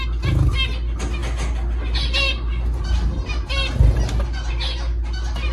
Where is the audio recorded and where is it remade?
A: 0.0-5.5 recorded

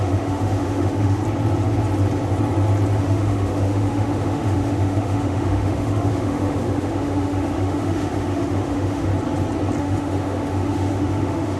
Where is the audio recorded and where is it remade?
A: 0.0-1.2 remade; 1.2-3.0 recorded; 3.0-9.1 remade; 9.1-9.8 recorded; 9.8-11.6 remade

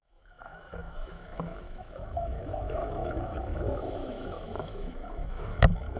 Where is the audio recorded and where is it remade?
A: 0.0-6.0 remade

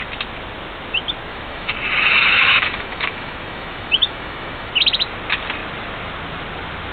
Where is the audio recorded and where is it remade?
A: 0.0-1.3 recorded; 1.3-4.7 remade; 4.7-6.9 recorded

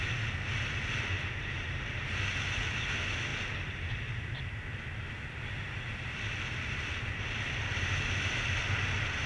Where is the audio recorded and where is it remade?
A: 0.0-9.3 recorded

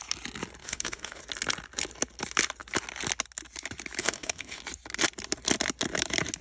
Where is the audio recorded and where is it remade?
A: 0.0-0.6 recorded; 0.6-1.2 remade; 1.2-4.0 recorded; 4.0-4.6 remade; 4.6-6.4 recorded

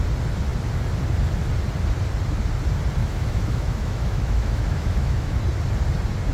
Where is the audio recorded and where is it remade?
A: 0.0-3.0 recorded; 3.0-5.4 remade; 5.4-6.3 recorded

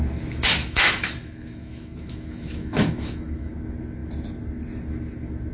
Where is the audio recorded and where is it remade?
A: 0.0-0.6 recorded; 0.6-3.5 remade; 3.5-5.5 recorded